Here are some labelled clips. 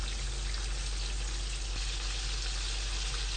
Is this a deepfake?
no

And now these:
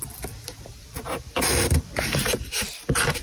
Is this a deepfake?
yes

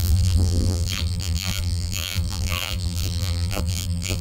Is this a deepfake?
yes